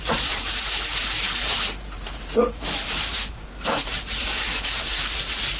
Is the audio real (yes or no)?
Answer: no